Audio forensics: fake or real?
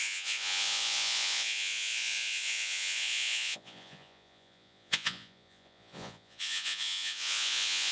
fake